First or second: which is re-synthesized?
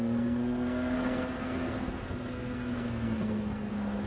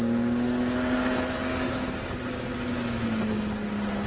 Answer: first